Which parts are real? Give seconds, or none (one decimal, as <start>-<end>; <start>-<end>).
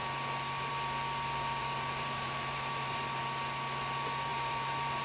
0.0-1.6; 3.2-4.3